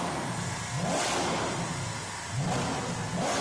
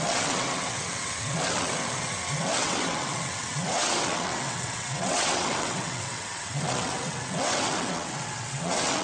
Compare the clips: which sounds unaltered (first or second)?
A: first